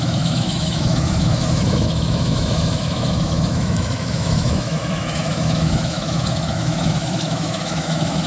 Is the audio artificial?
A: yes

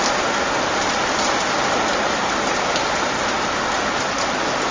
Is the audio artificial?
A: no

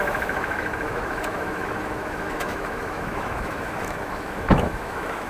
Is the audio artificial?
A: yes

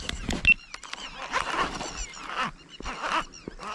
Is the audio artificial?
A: no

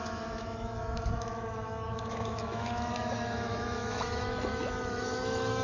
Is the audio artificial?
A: yes